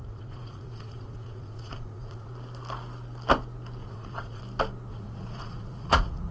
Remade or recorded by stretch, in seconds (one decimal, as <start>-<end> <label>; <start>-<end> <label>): 0.0-2.3 remade; 2.3-3.8 recorded; 3.8-4.4 remade; 4.4-4.9 recorded; 4.9-6.3 remade